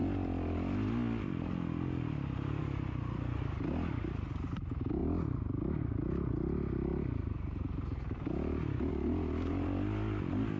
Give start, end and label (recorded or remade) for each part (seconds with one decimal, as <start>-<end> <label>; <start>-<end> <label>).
0.0-10.6 recorded